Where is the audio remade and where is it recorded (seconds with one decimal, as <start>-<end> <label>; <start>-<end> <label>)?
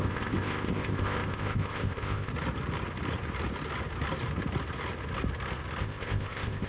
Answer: 0.0-2.3 remade; 2.3-5.8 recorded; 5.8-6.7 remade